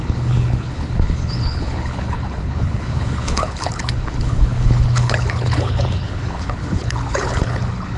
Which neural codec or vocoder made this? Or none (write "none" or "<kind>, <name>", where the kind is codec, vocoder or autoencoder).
codec, HILCodec